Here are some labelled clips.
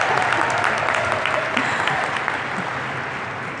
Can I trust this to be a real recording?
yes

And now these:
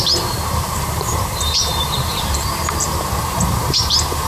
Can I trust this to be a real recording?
no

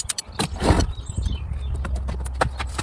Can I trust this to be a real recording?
no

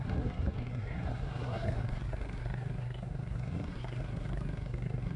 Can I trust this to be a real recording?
no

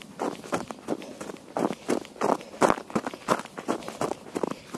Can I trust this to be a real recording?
yes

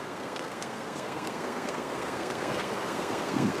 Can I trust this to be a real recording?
no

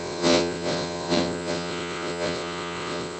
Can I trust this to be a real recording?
no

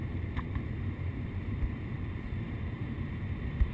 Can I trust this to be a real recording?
no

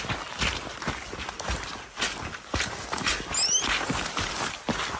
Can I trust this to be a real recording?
yes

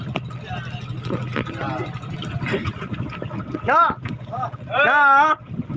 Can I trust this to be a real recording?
yes